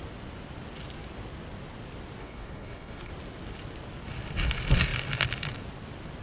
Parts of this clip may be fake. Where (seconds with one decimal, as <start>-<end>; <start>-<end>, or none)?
2.2-3.1